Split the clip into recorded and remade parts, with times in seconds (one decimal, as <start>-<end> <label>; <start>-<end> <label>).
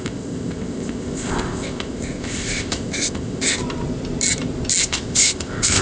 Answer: 0.0-3.6 remade; 3.6-4.8 recorded; 4.8-5.8 remade